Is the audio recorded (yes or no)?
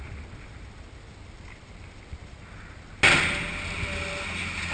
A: yes